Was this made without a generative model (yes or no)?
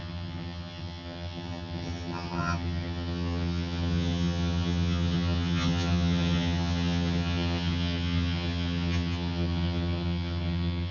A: no